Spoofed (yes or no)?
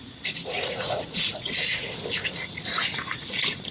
yes